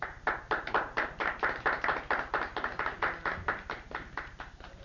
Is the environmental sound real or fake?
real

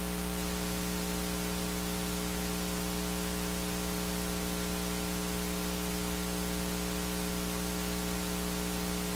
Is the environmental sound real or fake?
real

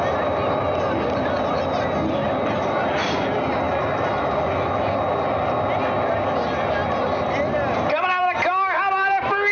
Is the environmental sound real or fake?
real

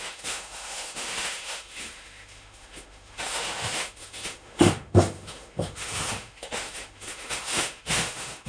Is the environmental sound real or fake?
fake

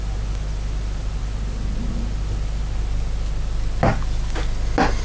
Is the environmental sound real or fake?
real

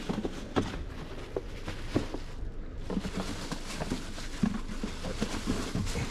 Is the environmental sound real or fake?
real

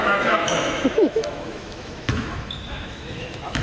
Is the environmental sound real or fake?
fake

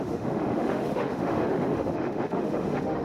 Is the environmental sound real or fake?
fake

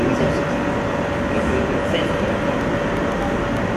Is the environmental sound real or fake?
real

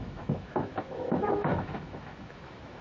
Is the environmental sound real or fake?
fake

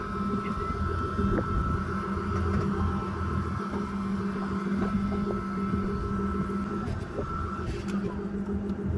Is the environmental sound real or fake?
real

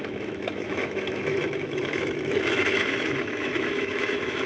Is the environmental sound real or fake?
fake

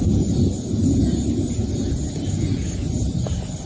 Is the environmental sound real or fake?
real